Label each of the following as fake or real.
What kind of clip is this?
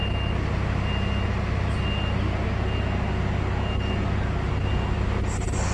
real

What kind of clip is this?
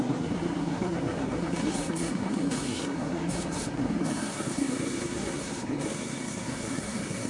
fake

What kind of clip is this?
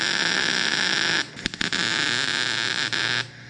real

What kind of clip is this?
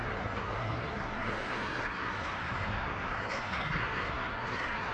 fake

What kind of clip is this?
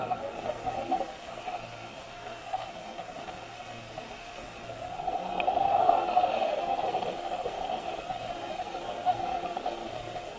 fake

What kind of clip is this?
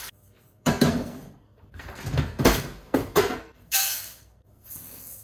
fake